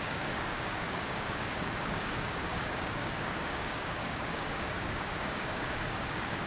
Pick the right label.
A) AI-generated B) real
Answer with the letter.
A